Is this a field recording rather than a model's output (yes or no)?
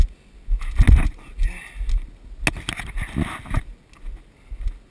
yes